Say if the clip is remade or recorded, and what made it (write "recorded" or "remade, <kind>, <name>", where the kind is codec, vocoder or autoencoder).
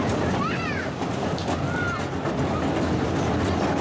recorded